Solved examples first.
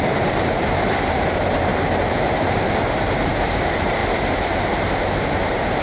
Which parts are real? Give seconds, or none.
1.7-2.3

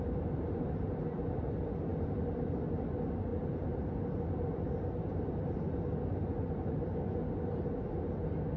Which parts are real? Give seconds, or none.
0.0-8.6

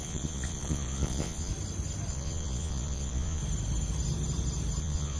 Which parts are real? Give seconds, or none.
1.5-2.1; 3.4-4.8